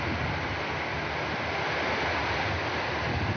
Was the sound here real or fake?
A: real